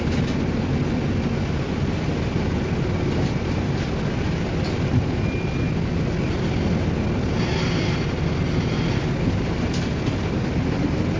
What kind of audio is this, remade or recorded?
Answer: recorded